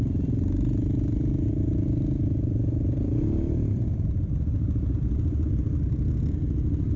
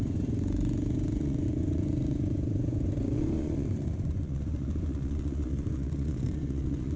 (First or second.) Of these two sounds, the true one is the first